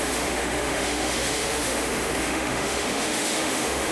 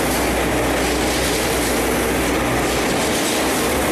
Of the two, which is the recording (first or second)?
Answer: second